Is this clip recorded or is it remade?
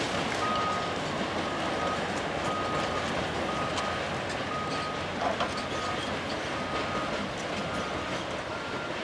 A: recorded